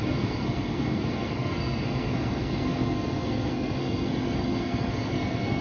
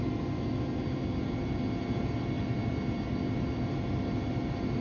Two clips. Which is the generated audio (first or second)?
first